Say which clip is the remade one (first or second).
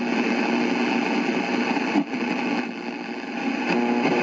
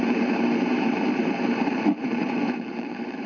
second